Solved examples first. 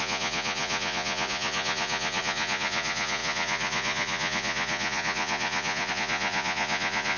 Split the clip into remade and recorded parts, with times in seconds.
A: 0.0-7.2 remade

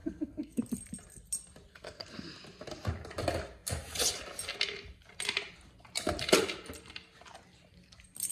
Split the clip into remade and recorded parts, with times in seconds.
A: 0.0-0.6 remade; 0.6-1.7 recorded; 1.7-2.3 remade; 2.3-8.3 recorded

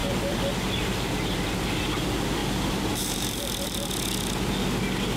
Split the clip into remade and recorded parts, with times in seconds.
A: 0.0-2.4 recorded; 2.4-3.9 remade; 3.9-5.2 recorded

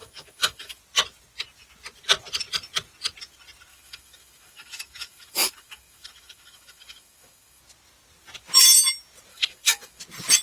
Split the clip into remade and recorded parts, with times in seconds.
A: 0.0-0.8 remade; 0.8-3.7 recorded; 3.7-7.6 remade; 7.6-9.3 recorded; 9.3-10.0 remade; 10.0-10.4 recorded

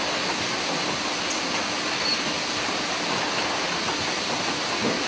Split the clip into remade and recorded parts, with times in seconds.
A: 0.0-5.1 recorded

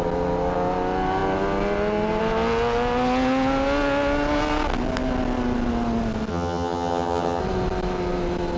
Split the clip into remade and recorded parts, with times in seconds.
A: 0.0-6.3 recorded; 6.3-7.4 remade; 7.4-8.6 recorded